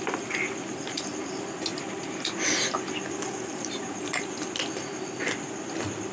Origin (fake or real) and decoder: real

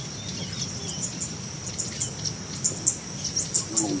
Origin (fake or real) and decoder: real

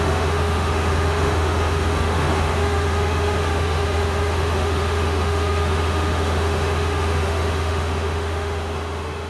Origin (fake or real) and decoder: fake, autoencoder, DAC-VAE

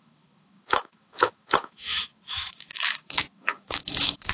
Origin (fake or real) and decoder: fake, autoencoder, DAC-VAE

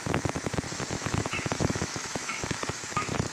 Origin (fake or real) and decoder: fake, autoencoder, DAC-VAE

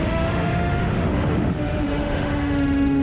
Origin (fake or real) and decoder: fake, autoencoder, DAC-VAE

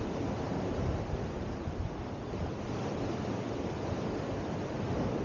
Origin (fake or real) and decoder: real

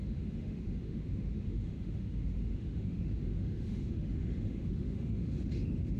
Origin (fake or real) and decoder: fake, autoencoder, DAC-VAE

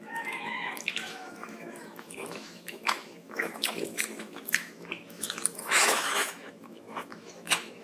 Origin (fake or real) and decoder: fake, autoencoder, DAC-VAE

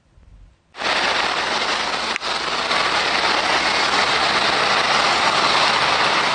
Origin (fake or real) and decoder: real